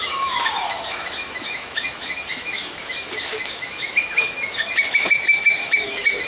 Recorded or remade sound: remade